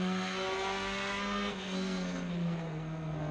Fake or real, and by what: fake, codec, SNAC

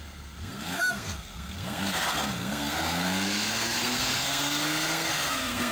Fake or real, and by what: fake, codec, SNAC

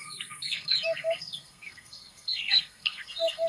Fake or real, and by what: fake, codec, SNAC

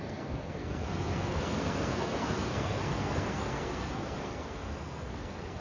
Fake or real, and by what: fake, codec, SNAC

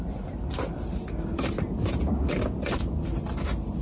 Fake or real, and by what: real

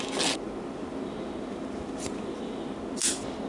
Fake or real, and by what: real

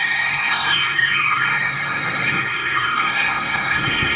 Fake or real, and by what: fake, codec, SNAC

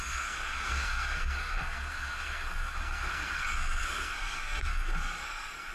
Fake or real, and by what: fake, codec, SNAC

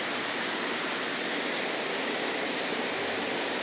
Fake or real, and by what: real